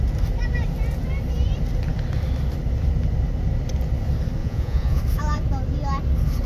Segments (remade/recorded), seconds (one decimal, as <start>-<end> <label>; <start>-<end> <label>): 0.0-4.4 recorded; 4.4-5.0 remade; 5.0-6.5 recorded

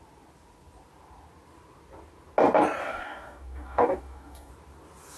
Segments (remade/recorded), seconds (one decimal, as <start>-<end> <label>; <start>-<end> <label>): 0.0-2.8 recorded; 2.8-4.5 remade; 4.5-5.2 recorded

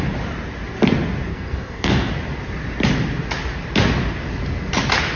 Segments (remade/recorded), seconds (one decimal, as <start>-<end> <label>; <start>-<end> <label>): 0.0-1.3 recorded; 1.3-2.1 remade; 2.1-5.2 recorded

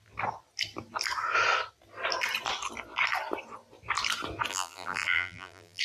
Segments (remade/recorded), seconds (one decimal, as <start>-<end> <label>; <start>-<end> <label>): 0.0-4.5 recorded; 4.5-5.8 remade

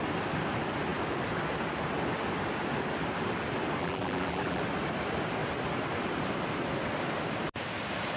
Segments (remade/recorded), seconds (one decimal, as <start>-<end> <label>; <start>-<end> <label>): 0.0-3.8 recorded; 3.8-4.6 remade; 4.6-8.2 recorded

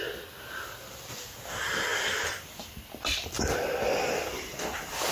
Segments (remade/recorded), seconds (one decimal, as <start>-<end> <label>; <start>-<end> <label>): 0.0-5.1 recorded

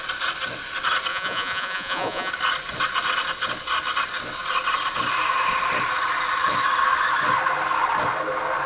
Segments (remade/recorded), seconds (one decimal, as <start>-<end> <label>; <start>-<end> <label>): 0.0-1.1 recorded; 1.1-2.3 remade; 2.3-8.7 recorded